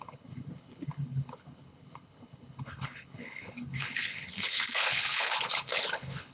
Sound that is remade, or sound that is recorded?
remade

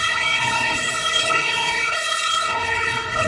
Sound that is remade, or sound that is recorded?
remade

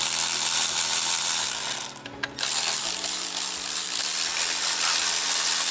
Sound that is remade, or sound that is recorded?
recorded